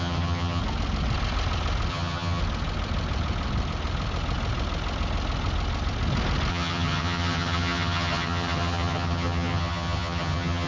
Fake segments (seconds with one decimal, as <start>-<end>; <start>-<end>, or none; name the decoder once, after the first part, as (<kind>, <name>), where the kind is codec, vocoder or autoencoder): 0.0-0.6 (vocoder, HiFi-GAN); 1.9-2.4; 6.5-10.7